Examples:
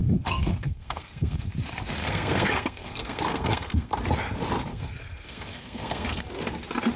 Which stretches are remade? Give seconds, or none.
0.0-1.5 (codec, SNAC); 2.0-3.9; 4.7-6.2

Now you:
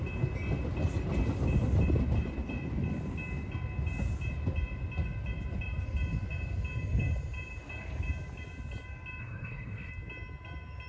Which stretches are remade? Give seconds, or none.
9.2-9.9 (codec, SNAC)